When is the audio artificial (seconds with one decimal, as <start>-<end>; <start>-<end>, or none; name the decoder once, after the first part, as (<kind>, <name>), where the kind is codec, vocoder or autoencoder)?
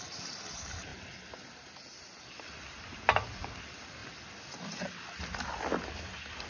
none